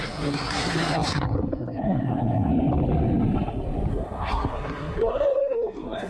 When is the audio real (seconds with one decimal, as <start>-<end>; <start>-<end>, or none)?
2.5-3.9